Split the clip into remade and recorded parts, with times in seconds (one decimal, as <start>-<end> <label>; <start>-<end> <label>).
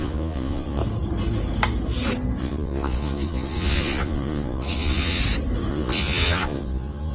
0.0-0.8 remade; 0.8-2.4 recorded; 2.4-5.2 remade; 5.2-5.7 recorded; 5.7-7.1 remade